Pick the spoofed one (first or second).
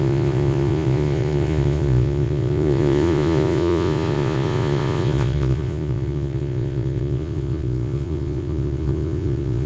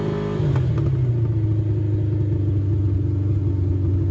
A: first